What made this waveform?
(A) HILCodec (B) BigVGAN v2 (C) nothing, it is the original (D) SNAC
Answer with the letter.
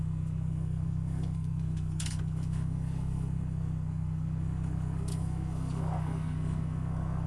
D